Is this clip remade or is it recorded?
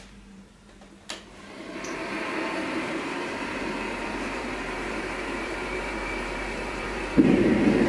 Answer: remade